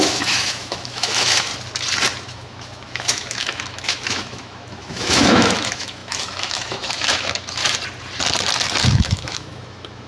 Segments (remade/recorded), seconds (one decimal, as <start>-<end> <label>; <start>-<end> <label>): 0.0-1.5 remade; 1.5-2.2 recorded; 2.2-7.6 remade; 7.6-8.8 recorded; 8.8-10.1 remade